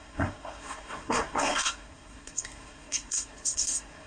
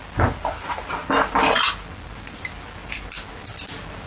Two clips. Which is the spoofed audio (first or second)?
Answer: first